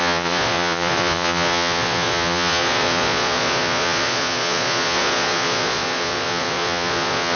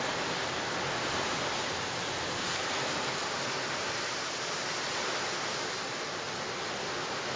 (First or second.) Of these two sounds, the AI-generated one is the first